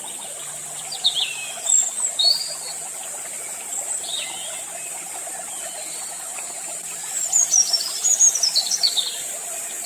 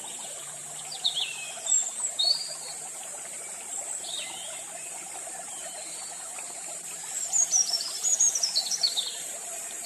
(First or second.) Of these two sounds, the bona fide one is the first